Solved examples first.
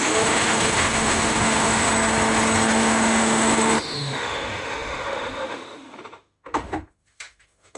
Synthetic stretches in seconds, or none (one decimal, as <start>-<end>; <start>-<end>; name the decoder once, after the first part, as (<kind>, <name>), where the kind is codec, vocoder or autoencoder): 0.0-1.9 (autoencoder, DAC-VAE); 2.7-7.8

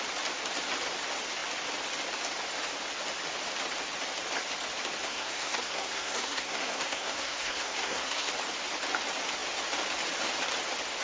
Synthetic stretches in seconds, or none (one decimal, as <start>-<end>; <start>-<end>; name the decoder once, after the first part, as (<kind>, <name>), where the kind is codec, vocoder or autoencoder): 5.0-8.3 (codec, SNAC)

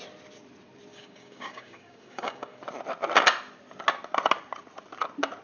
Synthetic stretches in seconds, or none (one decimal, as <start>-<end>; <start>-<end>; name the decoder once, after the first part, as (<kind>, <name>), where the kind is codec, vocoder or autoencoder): 0.9-2.6 (codec, DAC)

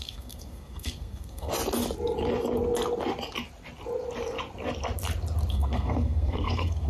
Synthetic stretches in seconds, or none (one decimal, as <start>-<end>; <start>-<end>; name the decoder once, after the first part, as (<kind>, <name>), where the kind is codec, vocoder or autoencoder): 0.0-1.5 (codec, SNAC); 5.5-6.9